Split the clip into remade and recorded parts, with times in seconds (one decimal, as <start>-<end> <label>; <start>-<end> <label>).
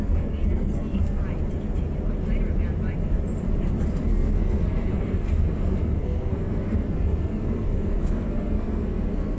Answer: 0.0-1.2 remade; 1.2-4.0 recorded; 4.0-9.4 remade